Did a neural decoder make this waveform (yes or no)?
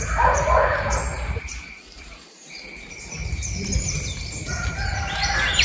yes